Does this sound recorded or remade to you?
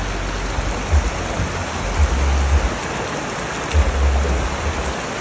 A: recorded